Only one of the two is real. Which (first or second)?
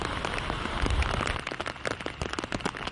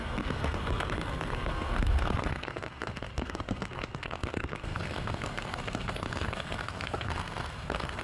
first